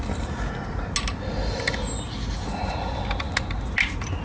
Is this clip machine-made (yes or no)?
no